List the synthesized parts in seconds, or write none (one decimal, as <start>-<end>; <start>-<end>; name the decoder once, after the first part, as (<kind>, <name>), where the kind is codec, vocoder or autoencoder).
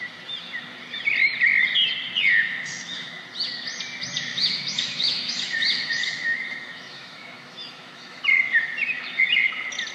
2.5-3.2 (autoencoder, DAC-VAE); 4.3-8.2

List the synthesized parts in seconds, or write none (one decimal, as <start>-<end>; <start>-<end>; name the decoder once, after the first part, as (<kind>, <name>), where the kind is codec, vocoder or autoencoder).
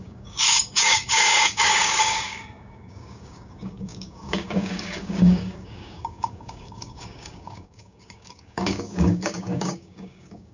0.0-10.5 (codec, DAC)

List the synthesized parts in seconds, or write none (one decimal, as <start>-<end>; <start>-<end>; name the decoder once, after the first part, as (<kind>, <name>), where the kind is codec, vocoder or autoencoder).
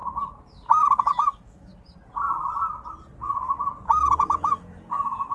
1.0-1.7 (autoencoder, DAC-VAE); 4.1-5.3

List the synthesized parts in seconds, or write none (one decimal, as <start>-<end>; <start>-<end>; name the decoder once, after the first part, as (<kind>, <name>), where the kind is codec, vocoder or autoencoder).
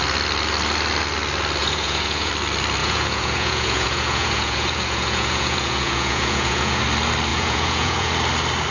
1.6-2.3 (vocoder, Vocos); 2.8-6.8; 7.3-8.1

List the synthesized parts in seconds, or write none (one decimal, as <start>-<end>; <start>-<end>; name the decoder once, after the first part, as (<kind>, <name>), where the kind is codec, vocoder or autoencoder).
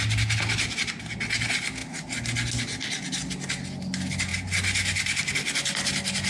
none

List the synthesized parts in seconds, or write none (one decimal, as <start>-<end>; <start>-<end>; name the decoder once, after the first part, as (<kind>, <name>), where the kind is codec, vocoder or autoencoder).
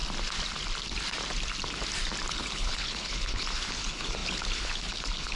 2.3-5.4 (codec, HILCodec)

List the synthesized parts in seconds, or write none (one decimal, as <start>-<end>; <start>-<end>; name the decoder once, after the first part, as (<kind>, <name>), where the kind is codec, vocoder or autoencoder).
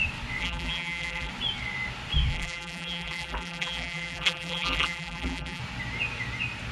0.4-1.3 (vocoder, BigVGAN v2); 2.3-5.6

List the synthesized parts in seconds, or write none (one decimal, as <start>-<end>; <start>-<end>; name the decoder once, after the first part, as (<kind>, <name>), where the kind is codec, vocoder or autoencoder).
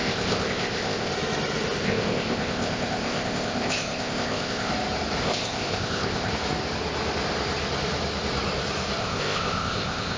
0.0-1.1 (codec, ZipCodec); 1.8-4.7; 5.2-6.3; 9.0-10.2